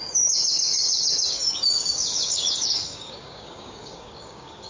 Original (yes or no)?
no